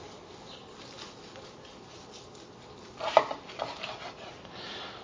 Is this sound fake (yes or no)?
no